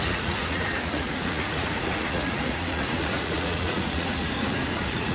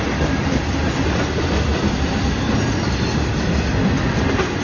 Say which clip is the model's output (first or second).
first